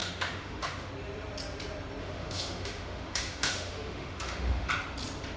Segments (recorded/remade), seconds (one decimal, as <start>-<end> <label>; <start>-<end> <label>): 0.0-0.9 remade; 0.9-2.0 recorded; 2.0-4.7 remade; 4.7-5.4 recorded

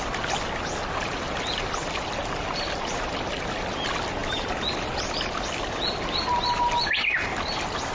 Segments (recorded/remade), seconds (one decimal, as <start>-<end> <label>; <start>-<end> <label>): 0.0-7.9 recorded

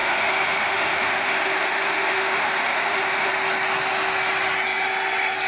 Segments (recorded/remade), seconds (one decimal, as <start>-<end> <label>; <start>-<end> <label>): 0.0-3.3 remade; 3.3-5.5 recorded

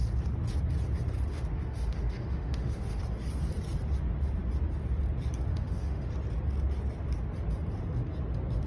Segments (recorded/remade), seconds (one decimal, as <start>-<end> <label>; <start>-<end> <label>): 0.0-1.3 recorded; 1.3-3.0 remade; 3.0-5.5 recorded; 5.5-6.1 remade; 6.1-8.7 recorded

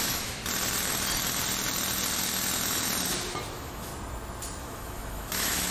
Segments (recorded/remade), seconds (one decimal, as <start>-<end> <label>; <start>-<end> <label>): 0.0-0.4 remade; 0.4-3.5 recorded; 3.5-3.9 remade; 3.9-4.6 recorded; 4.6-5.7 remade